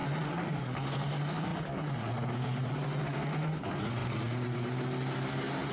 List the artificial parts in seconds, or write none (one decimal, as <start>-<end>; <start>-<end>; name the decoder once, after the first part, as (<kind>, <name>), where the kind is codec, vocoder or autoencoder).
none